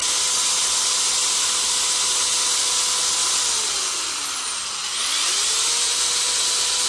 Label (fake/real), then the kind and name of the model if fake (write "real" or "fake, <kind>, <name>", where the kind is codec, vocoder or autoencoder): real